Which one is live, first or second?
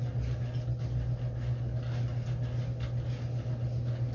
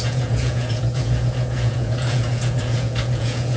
first